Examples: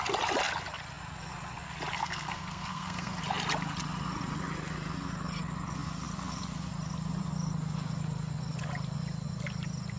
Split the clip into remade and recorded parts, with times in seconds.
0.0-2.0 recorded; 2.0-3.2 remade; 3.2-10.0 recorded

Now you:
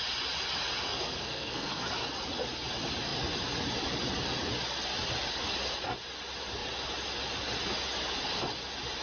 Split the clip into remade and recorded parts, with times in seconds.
0.0-0.9 recorded; 0.9-1.9 remade; 1.9-9.0 recorded

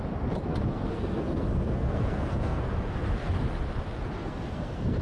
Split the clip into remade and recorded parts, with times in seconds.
0.0-0.5 recorded; 0.5-3.3 remade; 3.3-4.2 recorded; 4.2-5.0 remade

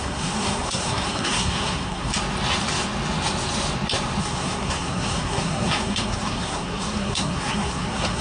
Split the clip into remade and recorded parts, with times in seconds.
0.0-2.1 remade; 2.1-4.2 recorded; 4.2-8.2 remade

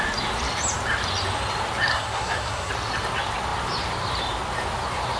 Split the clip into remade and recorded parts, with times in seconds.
0.0-1.9 recorded; 1.9-2.7 remade; 2.7-5.2 recorded

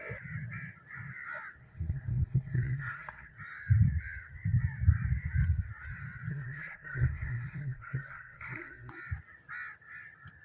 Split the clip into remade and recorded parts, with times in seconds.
0.0-1.6 recorded; 1.6-3.3 remade; 3.3-6.3 recorded; 6.3-8.9 remade; 8.9-10.4 recorded